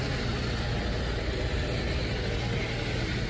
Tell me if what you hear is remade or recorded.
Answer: recorded